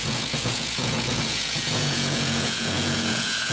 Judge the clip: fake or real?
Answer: fake